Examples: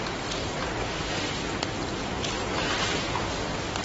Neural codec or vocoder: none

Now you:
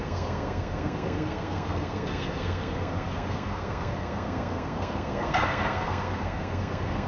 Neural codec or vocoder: codec, SNAC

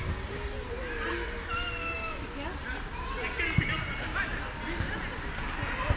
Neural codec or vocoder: none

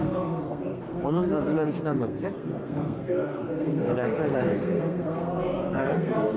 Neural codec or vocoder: codec, SNAC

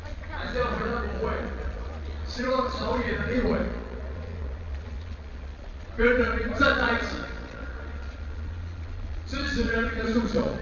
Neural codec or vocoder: vocoder, Vocos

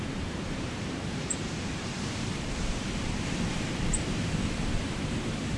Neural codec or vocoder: vocoder, BigVGAN v2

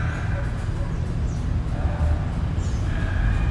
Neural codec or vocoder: none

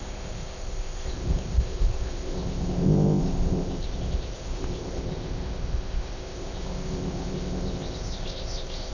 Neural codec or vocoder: codec, ZipCodec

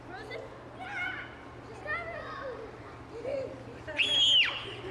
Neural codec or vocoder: none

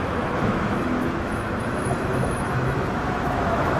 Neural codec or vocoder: autoencoder, DAC-VAE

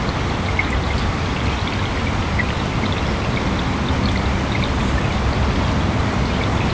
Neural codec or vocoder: none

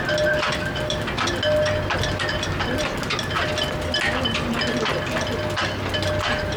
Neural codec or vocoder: none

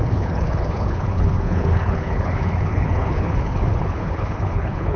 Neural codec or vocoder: codec, HILCodec